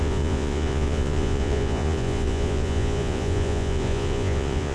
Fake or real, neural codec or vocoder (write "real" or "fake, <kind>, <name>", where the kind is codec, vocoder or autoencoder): fake, vocoder, Vocos